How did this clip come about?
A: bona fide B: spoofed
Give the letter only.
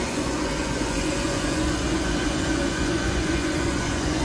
B